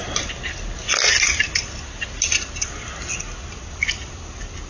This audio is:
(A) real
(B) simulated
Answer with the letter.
A